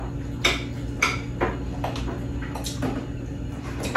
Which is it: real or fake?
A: real